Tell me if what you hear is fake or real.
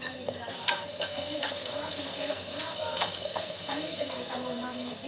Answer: fake